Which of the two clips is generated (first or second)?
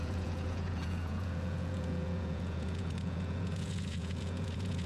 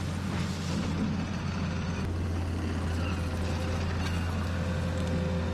first